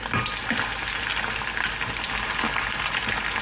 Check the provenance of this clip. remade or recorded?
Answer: recorded